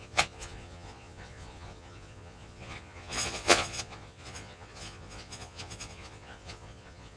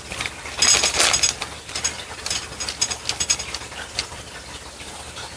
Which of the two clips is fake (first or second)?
first